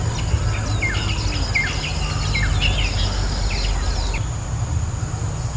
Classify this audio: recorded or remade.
recorded